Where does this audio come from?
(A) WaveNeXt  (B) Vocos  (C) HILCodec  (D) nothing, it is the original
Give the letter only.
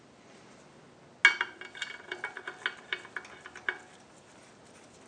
D